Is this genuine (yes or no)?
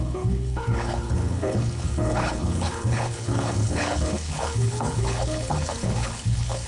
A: no